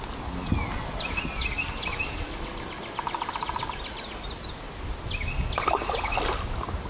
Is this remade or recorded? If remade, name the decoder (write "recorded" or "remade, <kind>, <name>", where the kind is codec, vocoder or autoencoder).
recorded